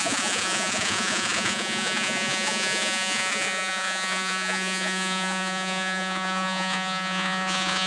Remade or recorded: remade